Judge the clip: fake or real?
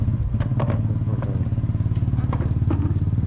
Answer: real